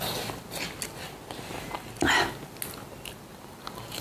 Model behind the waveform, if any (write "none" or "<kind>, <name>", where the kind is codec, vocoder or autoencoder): none